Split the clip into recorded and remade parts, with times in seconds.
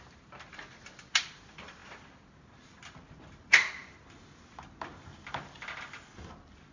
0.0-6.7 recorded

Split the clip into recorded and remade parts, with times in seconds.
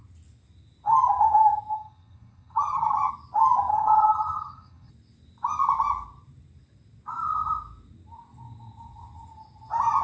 0.0-1.7 recorded; 1.7-3.1 remade; 3.1-3.7 recorded; 3.7-4.9 remade; 4.9-10.0 recorded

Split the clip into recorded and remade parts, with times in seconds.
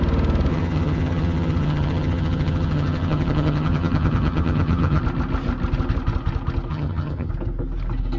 0.0-0.5 recorded; 0.5-5.0 remade; 5.0-6.7 recorded; 6.7-7.3 remade; 7.3-8.2 recorded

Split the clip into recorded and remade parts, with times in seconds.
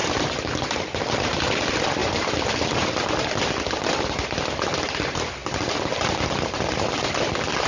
0.0-7.7 recorded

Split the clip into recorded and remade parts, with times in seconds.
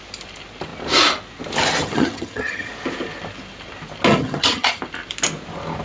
0.0-1.8 recorded; 1.8-2.7 remade; 2.7-4.1 recorded; 4.1-4.8 remade; 4.8-5.8 recorded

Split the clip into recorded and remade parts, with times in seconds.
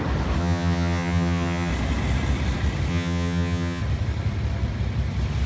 0.0-0.4 recorded; 0.4-1.7 remade; 1.7-2.9 recorded; 2.9-3.8 remade; 3.8-5.5 recorded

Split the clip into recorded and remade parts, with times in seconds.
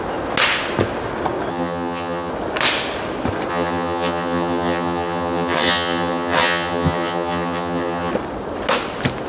0.0-1.5 recorded; 1.5-2.3 remade; 2.3-3.5 recorded; 3.5-8.1 remade; 8.1-9.3 recorded